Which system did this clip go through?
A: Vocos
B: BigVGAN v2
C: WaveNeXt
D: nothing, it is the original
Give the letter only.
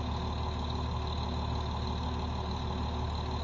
D